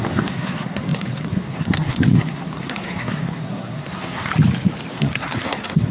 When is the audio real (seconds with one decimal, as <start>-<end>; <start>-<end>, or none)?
4.3-4.9